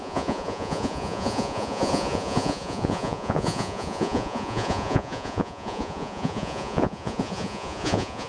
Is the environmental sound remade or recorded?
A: remade